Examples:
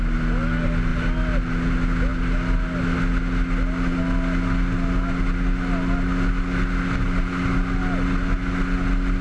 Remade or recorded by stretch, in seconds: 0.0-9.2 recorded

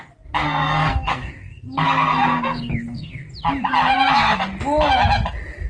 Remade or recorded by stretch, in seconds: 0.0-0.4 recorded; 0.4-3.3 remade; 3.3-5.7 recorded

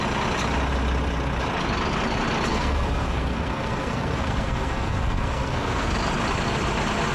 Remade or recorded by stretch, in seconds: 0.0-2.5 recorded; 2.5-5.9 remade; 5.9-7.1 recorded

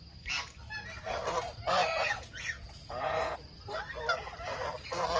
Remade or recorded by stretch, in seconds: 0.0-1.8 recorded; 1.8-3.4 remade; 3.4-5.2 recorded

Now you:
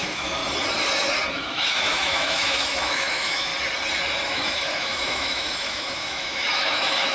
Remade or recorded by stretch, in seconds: 0.0-0.4 remade; 0.4-1.3 recorded; 1.3-3.5 remade; 3.5-4.3 recorded; 4.3-7.1 remade

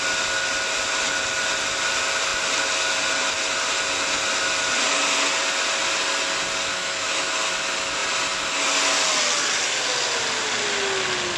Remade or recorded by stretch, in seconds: 0.0-6.7 recorded; 6.7-7.3 remade; 7.3-11.4 recorded

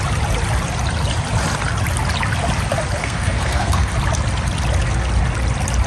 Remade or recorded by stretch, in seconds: 0.0-3.0 recorded; 3.0-3.9 remade; 3.9-5.9 recorded